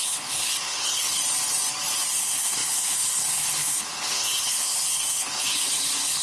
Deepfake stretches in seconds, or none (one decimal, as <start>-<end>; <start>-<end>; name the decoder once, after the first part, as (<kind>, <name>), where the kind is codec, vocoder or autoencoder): 0.0-1.2 (codec, HILCodec); 2.1-6.2